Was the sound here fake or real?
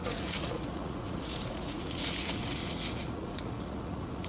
fake